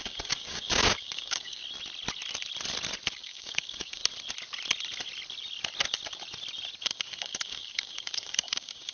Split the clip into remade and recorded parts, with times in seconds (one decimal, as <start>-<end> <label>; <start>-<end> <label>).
0.0-1.6 remade; 1.6-3.1 recorded; 3.1-4.0 remade; 4.0-6.9 recorded; 6.9-8.9 remade